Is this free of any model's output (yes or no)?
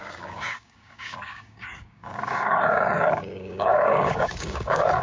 no